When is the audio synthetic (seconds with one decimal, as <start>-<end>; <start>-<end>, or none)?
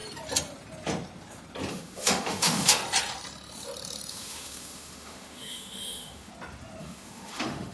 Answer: 1.7-2.8; 4.1-6.3; 6.8-7.7